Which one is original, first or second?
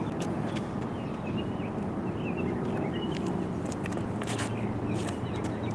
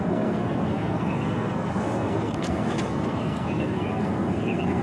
first